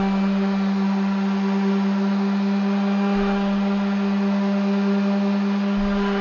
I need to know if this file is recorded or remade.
recorded